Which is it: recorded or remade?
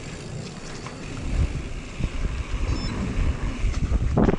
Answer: recorded